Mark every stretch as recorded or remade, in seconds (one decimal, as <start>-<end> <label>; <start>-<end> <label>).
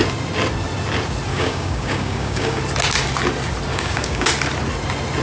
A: 0.0-1.3 recorded; 1.3-2.6 remade; 2.6-3.7 recorded; 3.7-4.3 remade; 4.3-5.2 recorded